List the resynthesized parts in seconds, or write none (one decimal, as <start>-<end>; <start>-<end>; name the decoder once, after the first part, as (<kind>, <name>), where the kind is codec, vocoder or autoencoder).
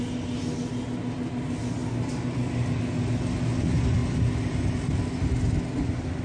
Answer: none